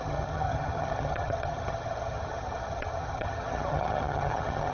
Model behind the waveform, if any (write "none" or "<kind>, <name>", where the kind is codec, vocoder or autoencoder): vocoder, HiFi-GAN